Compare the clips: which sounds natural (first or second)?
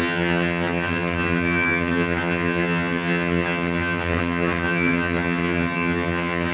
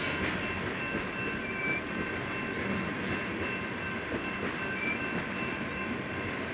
second